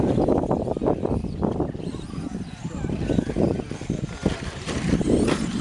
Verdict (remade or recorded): recorded